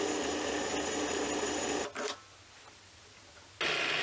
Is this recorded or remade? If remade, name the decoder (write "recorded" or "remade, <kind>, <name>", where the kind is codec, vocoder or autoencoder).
recorded